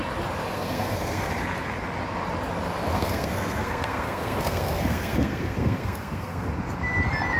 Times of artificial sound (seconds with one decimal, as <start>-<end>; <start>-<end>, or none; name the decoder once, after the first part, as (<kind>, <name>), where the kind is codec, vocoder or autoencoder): 0.5-1.3 (codec, SNAC); 2.9-6.5